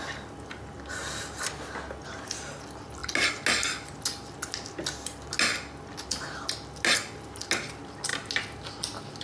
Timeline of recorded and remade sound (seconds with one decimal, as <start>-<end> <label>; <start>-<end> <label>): 0.0-9.2 recorded